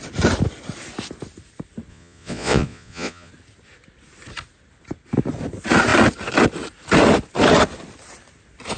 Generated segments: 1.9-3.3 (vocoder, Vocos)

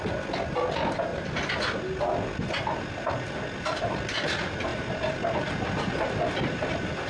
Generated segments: none

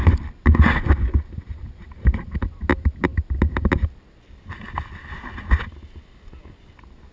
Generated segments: none

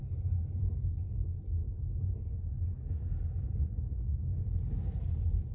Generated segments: 3.6-4.2 (vocoder, Vocos)

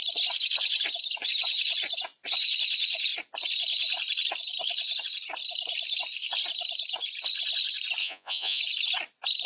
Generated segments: 8.0-8.6 (vocoder, Vocos)

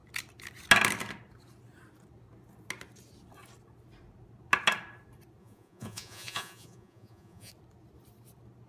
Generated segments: 5.4-7.5 (vocoder, Vocos)

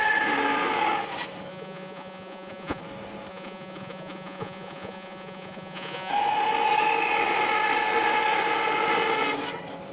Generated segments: 1.5-2.8 (vocoder, Vocos); 3.3-6.1